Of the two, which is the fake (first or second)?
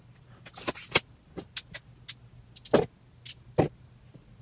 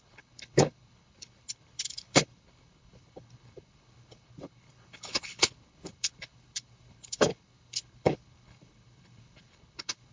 second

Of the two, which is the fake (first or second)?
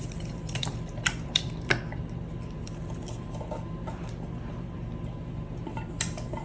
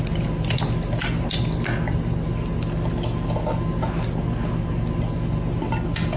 first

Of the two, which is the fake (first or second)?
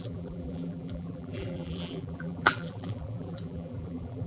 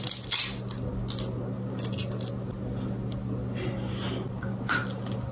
first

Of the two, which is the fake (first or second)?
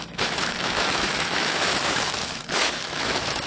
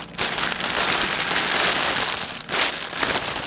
first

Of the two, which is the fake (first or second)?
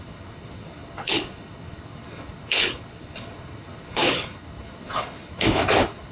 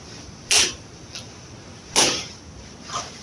first